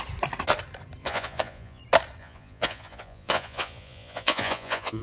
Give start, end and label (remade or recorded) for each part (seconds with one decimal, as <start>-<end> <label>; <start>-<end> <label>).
0.0-1.0 recorded; 1.0-1.8 remade; 1.8-2.2 recorded; 2.2-5.0 remade